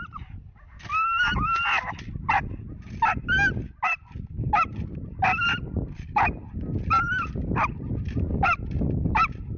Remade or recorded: recorded